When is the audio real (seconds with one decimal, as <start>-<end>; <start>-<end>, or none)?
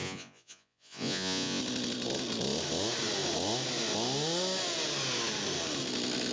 1.6-6.3